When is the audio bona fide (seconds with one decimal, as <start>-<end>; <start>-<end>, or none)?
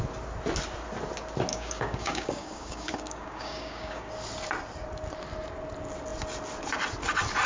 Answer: 0.0-1.5; 4.1-7.5